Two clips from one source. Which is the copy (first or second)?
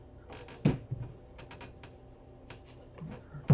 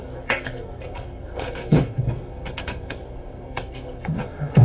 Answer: second